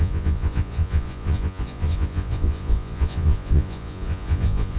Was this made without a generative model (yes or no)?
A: no